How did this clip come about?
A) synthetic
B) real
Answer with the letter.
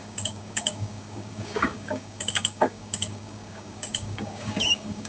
A